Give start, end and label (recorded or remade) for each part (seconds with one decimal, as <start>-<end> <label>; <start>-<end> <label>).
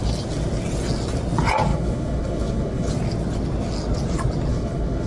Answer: 0.0-1.7 recorded; 1.7-2.9 remade; 2.9-4.5 recorded; 4.5-5.1 remade